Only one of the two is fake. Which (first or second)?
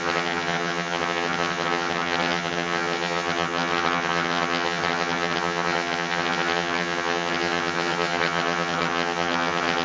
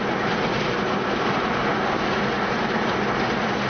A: first